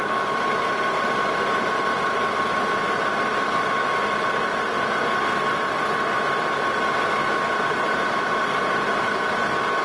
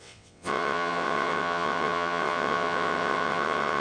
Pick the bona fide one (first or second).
first